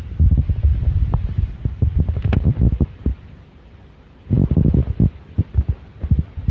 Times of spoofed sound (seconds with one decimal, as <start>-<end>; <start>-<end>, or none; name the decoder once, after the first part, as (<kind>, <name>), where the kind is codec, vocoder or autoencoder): 0.7-4.6 (vocoder, BigVGAN v2)